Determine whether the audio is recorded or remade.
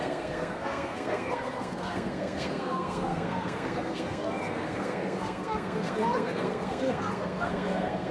remade